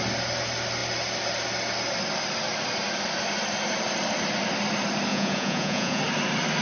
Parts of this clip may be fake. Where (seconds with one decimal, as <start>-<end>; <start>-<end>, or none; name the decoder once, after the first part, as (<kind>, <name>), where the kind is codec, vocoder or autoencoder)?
5.1-6.0 (vocoder, Vocos)